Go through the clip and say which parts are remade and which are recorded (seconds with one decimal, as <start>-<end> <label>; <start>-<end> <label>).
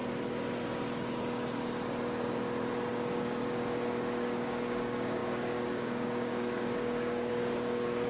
0.0-2.9 recorded; 2.9-8.1 remade